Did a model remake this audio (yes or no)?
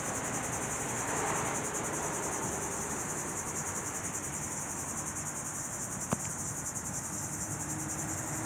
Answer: no